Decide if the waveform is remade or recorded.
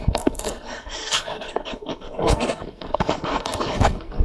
remade